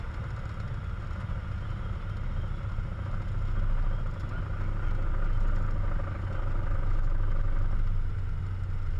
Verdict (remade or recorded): recorded